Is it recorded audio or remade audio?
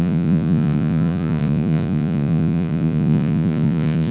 remade